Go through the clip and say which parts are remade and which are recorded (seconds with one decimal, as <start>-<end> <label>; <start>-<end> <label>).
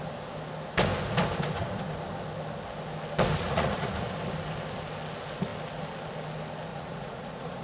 0.0-3.4 recorded; 3.4-3.9 remade; 3.9-6.7 recorded; 6.7-7.6 remade